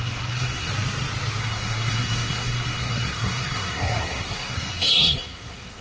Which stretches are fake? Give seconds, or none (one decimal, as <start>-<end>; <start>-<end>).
0.0-0.7; 1.4-5.8